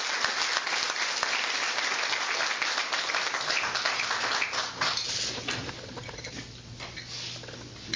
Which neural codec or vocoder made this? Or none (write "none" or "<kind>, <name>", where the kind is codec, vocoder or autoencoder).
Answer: none